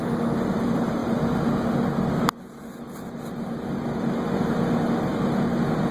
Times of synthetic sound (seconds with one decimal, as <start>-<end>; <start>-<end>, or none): none

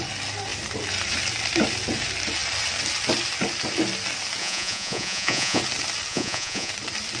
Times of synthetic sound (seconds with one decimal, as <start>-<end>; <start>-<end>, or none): 4.4-5.6; 6.1-6.7